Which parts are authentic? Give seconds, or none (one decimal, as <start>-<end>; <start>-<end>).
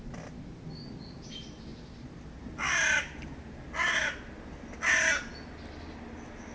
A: 0.0-6.5